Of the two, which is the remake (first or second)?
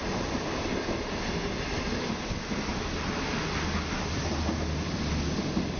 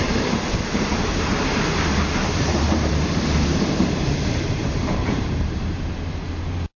second